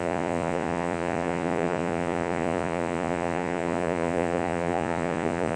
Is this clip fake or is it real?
fake